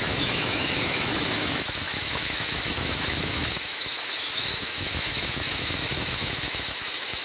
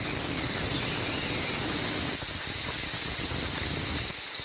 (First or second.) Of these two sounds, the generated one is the first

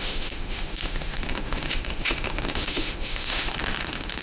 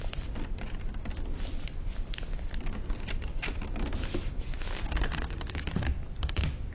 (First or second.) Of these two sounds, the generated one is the first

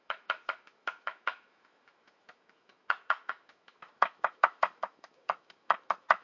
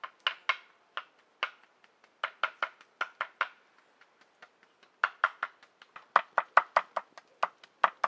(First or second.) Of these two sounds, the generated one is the first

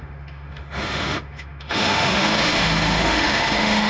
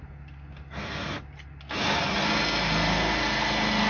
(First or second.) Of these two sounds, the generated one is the first